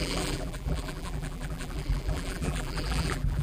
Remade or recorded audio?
remade